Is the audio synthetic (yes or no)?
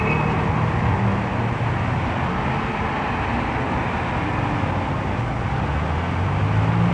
no